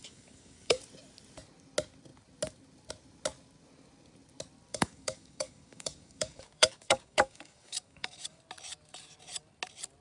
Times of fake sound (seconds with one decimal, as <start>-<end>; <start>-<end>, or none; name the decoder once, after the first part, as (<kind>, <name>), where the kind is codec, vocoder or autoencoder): 0.0-0.8 (codec, DAC); 4.7-8.4